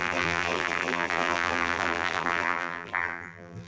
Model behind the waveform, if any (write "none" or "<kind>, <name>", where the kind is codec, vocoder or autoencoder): vocoder, BigVGAN v2